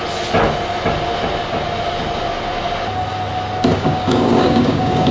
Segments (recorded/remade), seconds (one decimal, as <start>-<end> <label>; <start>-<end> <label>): 0.0-3.7 recorded; 3.7-5.1 remade